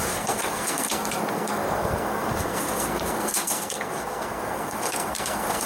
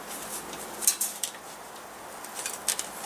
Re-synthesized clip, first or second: first